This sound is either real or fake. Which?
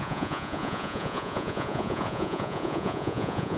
fake